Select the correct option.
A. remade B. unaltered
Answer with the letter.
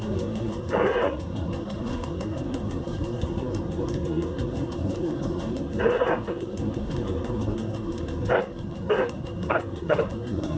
A